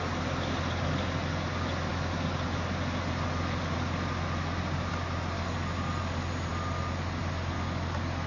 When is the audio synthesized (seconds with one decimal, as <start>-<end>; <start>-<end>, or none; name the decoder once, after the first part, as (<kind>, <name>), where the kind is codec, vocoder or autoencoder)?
none